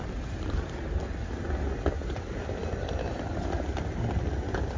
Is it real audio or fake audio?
real